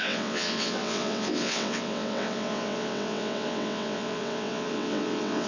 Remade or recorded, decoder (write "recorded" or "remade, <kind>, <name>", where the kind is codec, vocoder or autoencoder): remade, vocoder, WaveNeXt